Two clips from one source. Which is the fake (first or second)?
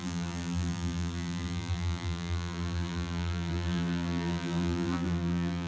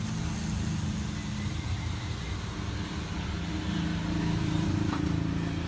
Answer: first